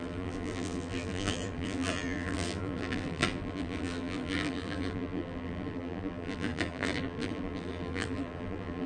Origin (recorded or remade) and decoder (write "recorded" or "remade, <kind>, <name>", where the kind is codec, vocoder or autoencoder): remade, vocoder, BigVGAN v2